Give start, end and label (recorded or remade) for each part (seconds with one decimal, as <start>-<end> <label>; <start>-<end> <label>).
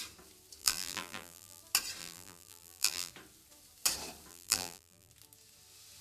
0.0-0.6 recorded; 0.6-1.6 remade; 1.6-2.0 recorded; 2.0-3.1 remade; 3.1-4.3 recorded; 4.3-5.1 remade; 5.1-6.0 recorded